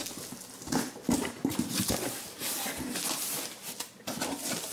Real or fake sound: real